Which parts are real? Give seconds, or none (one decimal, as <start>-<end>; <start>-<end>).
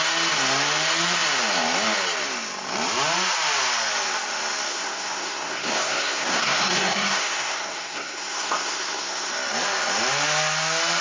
0.0-4.7; 9.3-11.0